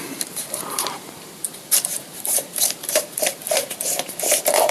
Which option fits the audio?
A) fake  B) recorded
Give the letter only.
A